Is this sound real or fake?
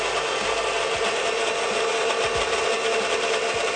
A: real